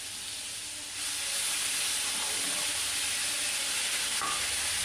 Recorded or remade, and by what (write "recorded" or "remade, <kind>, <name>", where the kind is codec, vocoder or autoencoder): recorded